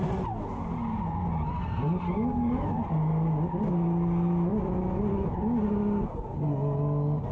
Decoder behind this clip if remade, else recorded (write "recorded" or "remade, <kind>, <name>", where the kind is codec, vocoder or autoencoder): recorded